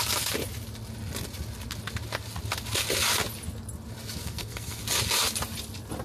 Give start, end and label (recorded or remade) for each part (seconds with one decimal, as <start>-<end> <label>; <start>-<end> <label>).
0.0-4.2 recorded; 4.2-4.8 remade; 4.8-6.0 recorded